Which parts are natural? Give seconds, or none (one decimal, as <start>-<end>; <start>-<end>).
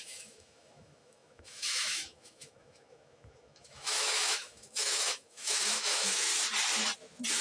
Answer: 6.3-7.4